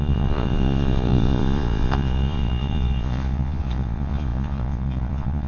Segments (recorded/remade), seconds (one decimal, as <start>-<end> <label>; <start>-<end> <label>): 0.0-5.5 remade